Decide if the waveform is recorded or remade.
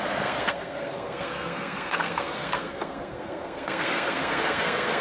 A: remade